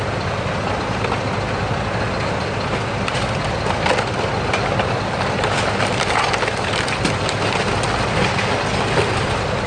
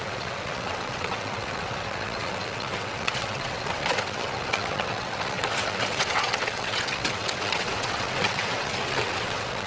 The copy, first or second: second